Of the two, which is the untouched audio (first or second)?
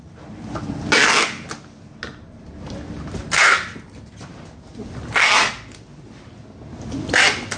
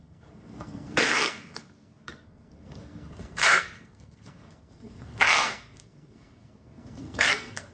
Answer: first